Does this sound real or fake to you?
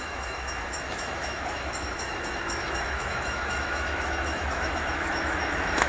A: fake